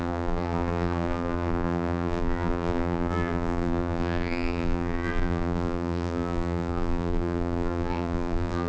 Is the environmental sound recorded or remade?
remade